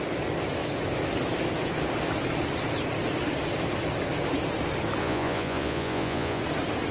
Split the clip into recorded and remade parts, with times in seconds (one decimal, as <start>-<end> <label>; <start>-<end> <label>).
0.0-5.0 recorded; 5.0-6.4 remade; 6.4-6.9 recorded